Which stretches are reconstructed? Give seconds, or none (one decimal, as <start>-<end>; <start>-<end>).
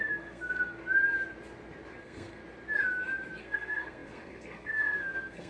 0.0-0.8; 2.0-2.4; 3.4-5.5